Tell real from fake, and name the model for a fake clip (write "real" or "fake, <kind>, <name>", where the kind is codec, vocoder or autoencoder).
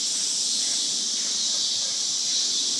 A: real